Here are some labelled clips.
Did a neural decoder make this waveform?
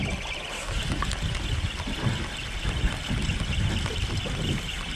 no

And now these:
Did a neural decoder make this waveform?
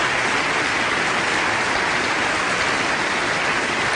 no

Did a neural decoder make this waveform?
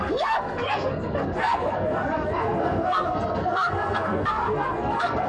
yes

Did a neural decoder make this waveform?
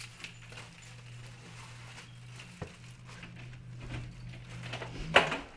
no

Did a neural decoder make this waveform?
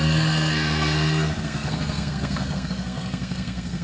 yes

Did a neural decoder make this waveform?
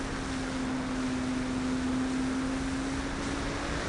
no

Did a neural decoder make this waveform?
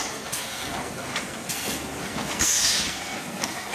yes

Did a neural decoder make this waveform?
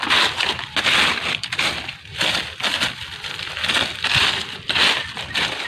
no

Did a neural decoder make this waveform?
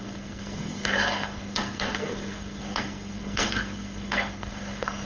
yes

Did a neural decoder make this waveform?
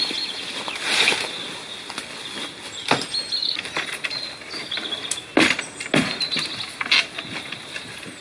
no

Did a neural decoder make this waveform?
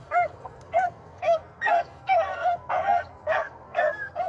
yes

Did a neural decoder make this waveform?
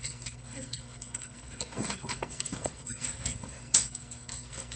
yes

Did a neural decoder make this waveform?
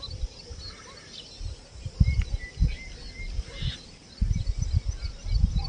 no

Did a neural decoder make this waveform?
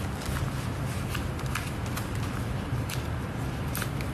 no